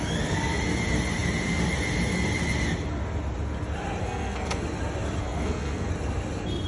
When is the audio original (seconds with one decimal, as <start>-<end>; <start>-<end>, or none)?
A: 0.0-4.0; 4.6-5.2; 5.9-6.7